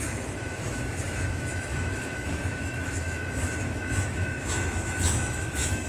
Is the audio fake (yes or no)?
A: yes